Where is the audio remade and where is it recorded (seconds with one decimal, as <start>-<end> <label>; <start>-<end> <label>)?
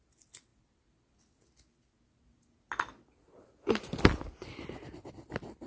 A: 0.0-5.7 recorded